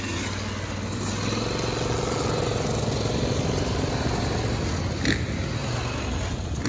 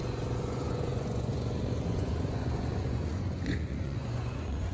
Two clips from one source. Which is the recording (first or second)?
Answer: first